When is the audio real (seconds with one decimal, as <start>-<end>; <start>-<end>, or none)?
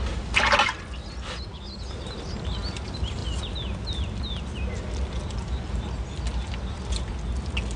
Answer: 0.0-7.8